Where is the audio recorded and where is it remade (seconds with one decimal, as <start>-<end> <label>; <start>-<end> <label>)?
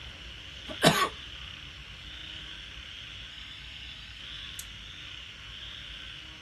0.0-3.3 recorded; 3.3-4.2 remade; 4.2-6.4 recorded